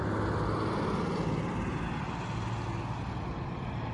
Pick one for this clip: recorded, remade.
recorded